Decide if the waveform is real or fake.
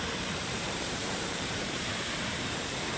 fake